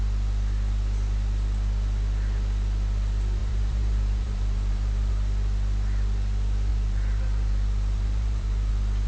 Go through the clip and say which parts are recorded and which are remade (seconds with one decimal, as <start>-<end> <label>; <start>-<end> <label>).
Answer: 0.0-3.4 recorded; 3.4-5.1 remade; 5.1-6.7 recorded; 6.7-8.7 remade; 8.7-9.1 recorded